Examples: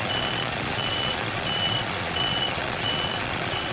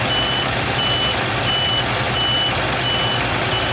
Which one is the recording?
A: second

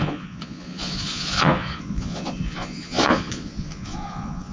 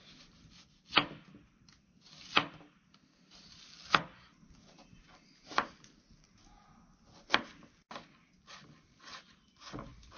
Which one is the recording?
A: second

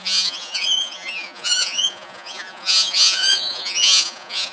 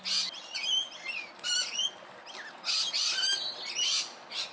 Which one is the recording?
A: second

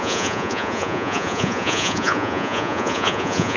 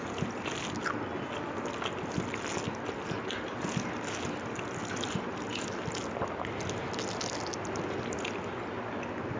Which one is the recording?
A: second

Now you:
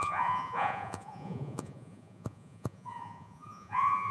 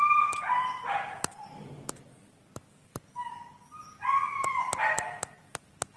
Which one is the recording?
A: second